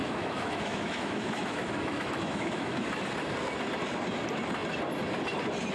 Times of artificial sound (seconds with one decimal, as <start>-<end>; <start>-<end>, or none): 0.0-2.9